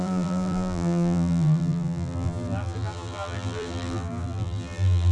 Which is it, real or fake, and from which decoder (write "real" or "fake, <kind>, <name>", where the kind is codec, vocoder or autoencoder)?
fake, vocoder, BigVGAN v2